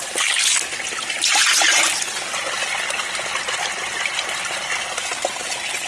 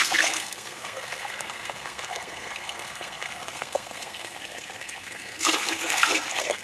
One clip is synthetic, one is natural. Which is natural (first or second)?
first